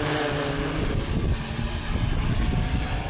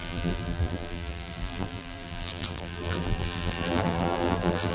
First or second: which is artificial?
second